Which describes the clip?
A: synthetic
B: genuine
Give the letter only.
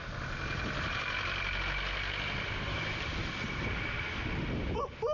B